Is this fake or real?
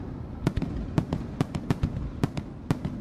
real